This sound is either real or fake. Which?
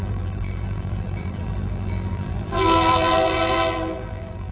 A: fake